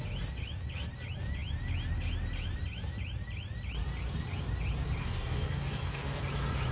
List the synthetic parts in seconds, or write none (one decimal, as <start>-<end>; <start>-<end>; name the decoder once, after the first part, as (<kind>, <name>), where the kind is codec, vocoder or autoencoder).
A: 5.0-6.2 (codec, DAC)

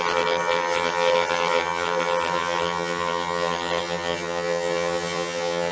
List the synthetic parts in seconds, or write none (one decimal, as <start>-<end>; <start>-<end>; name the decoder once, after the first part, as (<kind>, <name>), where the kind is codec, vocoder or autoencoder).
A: 0.0-5.7 (vocoder, HiFi-GAN)

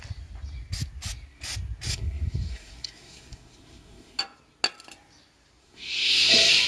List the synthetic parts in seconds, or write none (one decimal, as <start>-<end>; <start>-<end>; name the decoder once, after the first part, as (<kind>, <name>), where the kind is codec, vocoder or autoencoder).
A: 1.9-4.2 (codec, SNAC); 5.6-6.3

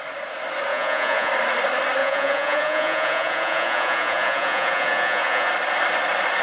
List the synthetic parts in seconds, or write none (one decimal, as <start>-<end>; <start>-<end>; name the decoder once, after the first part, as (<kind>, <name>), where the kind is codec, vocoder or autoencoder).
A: 0.7-1.3 (vocoder, Vocos); 2.0-5.5

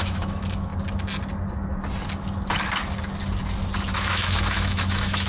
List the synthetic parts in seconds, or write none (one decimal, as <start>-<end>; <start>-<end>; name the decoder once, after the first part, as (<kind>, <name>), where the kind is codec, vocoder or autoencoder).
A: 0.0-0.7 (autoencoder, DAC-VAE); 3.9-5.3

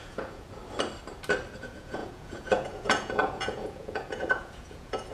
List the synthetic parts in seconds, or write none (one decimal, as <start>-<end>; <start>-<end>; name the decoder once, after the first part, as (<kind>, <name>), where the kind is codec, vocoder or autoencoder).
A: 0.0-0.6 (vocoder, Vocos); 1.6-5.1